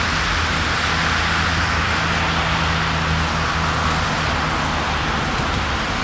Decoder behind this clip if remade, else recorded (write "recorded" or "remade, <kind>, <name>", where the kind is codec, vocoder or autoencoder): recorded